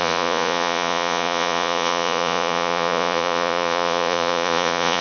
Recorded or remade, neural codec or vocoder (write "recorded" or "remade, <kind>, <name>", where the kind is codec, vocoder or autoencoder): remade, vocoder, Vocos